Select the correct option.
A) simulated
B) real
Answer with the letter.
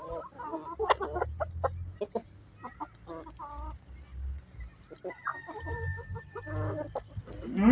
B